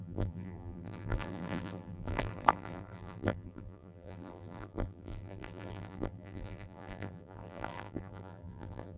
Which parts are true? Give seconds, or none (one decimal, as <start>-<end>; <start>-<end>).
none